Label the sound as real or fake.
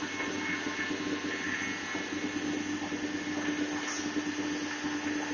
real